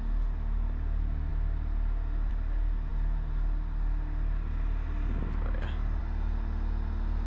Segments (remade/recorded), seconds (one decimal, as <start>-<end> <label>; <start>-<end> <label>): 0.0-7.3 recorded